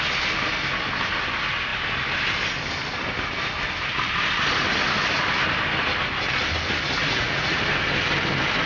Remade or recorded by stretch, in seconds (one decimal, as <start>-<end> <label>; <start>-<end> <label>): 0.0-7.0 recorded; 7.0-7.6 remade; 7.6-8.7 recorded